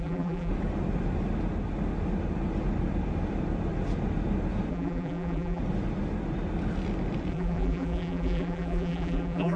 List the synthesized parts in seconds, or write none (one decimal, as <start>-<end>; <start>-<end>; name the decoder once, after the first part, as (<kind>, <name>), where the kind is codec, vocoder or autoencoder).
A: 0.0-0.5 (vocoder, BigVGAN v2); 4.7-5.6; 7.3-9.6